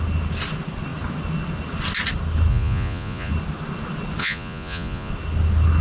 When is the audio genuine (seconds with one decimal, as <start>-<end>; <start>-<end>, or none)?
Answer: 0.0-2.5; 3.3-4.2; 5.1-5.8